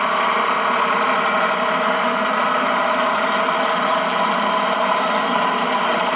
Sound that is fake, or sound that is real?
real